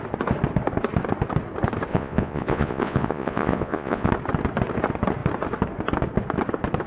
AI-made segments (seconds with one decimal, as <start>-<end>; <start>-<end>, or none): 1.9-4.1